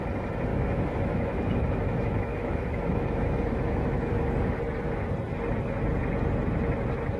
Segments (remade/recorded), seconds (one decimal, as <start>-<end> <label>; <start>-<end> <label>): 0.0-0.5 recorded; 0.5-4.6 remade; 4.6-7.2 recorded